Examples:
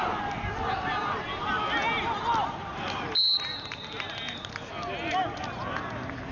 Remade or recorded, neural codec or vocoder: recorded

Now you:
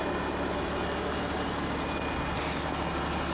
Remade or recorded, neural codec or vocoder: recorded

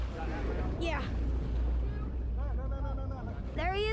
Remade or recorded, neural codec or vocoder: recorded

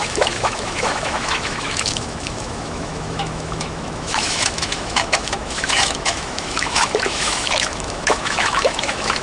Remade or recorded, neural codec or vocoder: remade, autoencoder, DAC-VAE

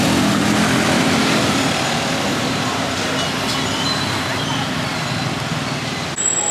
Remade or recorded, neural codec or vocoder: recorded